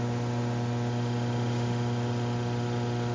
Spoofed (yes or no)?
no